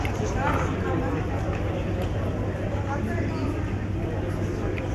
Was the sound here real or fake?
real